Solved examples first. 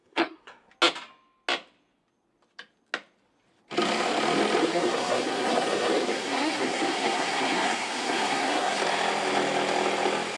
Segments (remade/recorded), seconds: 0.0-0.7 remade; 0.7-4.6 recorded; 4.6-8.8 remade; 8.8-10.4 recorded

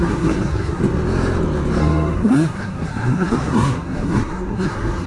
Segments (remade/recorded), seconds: 0.0-0.8 remade; 0.8-1.8 recorded; 1.8-5.1 remade